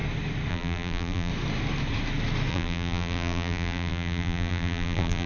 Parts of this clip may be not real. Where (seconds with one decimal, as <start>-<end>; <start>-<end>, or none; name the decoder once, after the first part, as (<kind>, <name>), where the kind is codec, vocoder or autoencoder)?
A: 0.5-1.3 (vocoder, BigVGAN v2); 2.5-5.3